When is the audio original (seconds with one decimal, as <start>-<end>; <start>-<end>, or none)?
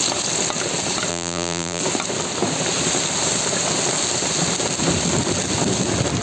0.0-1.1; 1.8-6.2